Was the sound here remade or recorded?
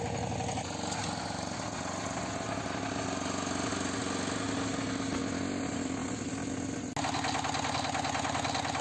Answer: recorded